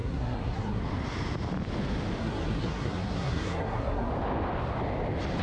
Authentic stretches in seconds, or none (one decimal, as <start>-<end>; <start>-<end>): 0.8-2.2; 4.1-5.4